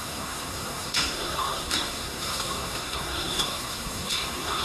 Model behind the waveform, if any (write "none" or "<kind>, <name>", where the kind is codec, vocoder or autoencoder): codec, SNAC